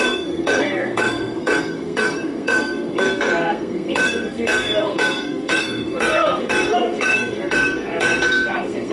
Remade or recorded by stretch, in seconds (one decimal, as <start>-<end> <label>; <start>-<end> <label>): 0.0-8.9 remade

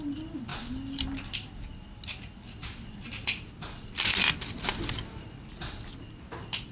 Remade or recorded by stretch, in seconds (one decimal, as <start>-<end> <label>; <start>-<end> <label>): 0.0-6.7 recorded

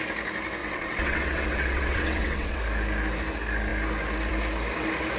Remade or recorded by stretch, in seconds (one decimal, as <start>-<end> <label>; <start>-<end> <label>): 0.0-0.6 recorded; 0.6-2.6 remade; 2.6-5.2 recorded

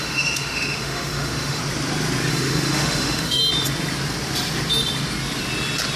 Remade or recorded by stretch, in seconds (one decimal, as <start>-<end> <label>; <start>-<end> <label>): 0.0-1.6 remade; 1.6-2.3 recorded; 2.3-3.4 remade; 3.4-6.0 recorded

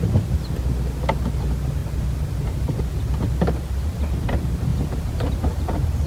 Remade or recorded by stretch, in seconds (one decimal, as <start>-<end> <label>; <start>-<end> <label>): 0.0-1.8 recorded; 1.8-2.8 remade; 2.8-4.7 recorded; 4.7-6.1 remade